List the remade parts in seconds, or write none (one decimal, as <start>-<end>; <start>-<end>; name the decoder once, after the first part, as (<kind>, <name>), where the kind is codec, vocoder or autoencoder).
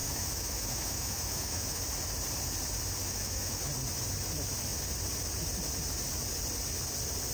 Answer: 0.0-1.8 (autoencoder, DAC-VAE); 3.0-3.7